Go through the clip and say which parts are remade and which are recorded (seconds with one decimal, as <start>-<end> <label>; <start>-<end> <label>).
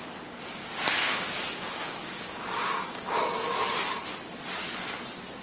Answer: 0.0-0.6 recorded; 0.6-3.2 remade; 3.2-5.4 recorded